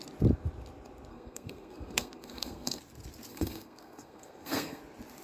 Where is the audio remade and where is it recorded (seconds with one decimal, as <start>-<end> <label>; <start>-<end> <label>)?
0.0-1.1 recorded; 1.1-2.8 remade; 2.8-3.3 recorded; 3.3-4.8 remade; 4.8-5.2 recorded